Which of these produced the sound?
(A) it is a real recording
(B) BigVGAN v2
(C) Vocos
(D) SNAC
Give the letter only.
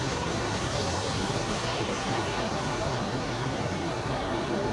D